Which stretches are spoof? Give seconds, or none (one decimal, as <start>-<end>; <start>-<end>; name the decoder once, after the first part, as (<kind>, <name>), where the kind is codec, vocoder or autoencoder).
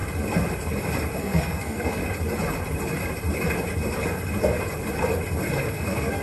1.2-2.0 (codec, SNAC); 5.7-6.2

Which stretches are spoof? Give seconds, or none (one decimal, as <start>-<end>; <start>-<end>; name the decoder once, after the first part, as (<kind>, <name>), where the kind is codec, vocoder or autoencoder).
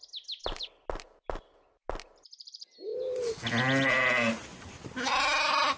none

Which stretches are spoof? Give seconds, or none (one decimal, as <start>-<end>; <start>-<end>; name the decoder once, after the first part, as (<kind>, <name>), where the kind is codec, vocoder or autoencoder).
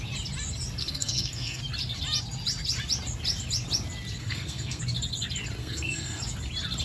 0.8-1.6 (codec, SNAC); 4.2-4.8; 5.6-6.2